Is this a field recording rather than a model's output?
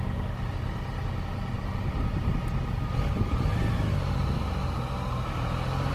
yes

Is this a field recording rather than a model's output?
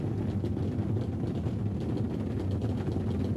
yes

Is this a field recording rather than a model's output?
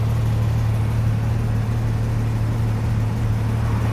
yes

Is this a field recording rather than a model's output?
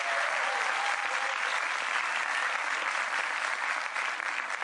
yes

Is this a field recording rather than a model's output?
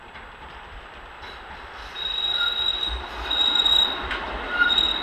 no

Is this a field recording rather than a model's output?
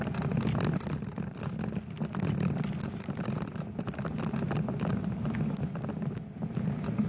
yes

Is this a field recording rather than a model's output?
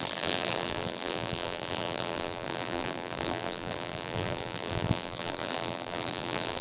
no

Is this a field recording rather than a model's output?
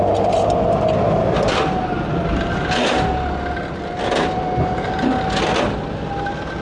yes